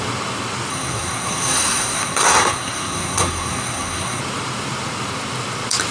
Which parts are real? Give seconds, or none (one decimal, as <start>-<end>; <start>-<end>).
0.0-0.7; 4.2-5.9